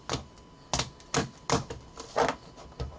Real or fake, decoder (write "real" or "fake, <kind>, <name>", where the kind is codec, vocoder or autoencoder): real